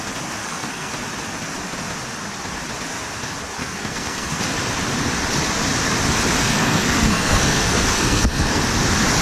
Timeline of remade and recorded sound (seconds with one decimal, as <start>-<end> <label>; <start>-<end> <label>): 0.0-0.4 recorded; 0.4-0.9 remade; 0.9-3.6 recorded; 3.6-4.4 remade; 4.4-6.4 recorded; 6.4-8.6 remade; 8.6-9.2 recorded